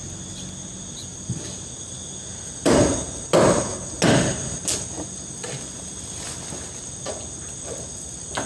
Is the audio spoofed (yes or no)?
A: no